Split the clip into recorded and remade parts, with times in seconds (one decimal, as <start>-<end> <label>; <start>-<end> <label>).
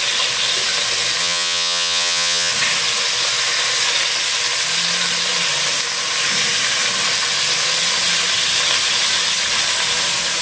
0.0-1.2 recorded; 1.2-2.5 remade; 2.5-10.4 recorded